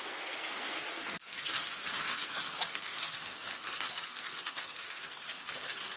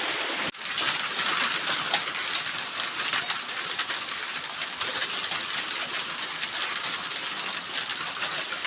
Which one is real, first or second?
second